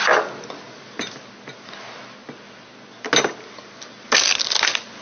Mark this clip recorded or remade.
recorded